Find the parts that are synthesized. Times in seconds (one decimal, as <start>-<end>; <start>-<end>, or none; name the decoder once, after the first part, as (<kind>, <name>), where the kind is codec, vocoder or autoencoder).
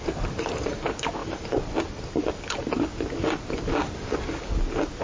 none